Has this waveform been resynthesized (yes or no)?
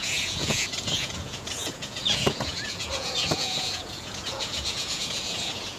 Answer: yes